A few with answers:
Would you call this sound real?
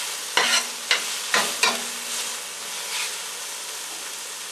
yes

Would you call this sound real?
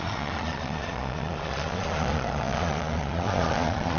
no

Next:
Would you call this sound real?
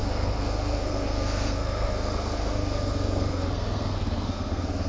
no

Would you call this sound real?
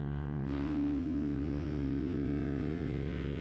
no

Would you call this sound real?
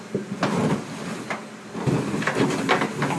yes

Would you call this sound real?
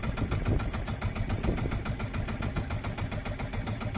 yes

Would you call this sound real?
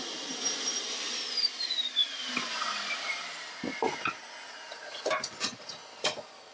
no